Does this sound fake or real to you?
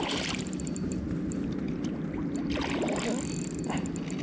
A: real